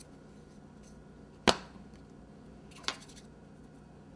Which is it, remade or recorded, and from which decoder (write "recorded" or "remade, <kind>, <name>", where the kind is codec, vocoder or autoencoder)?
recorded